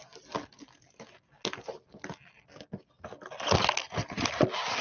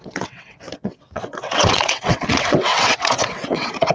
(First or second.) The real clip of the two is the first